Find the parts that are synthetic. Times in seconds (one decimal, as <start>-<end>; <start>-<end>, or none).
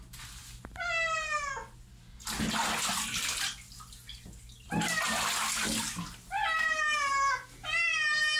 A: none